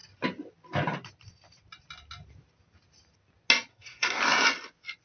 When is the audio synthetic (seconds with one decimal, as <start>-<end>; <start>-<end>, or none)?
3.7-4.2